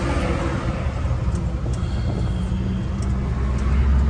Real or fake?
real